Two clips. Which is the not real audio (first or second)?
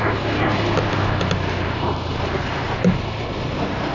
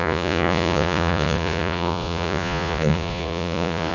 second